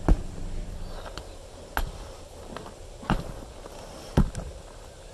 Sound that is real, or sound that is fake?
real